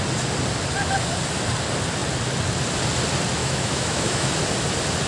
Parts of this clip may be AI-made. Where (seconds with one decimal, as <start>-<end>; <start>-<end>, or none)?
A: 3.4-4.3